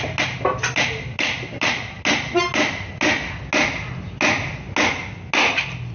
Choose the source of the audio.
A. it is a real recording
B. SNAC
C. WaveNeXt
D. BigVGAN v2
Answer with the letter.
A